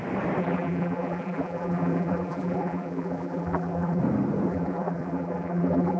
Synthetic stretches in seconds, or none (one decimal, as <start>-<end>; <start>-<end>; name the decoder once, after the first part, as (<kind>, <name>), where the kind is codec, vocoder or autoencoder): 0.4-4.0 (vocoder, BigVGAN v2); 4.5-6.0